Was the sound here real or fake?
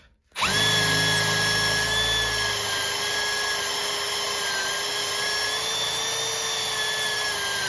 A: real